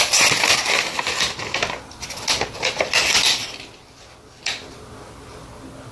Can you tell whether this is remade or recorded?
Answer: recorded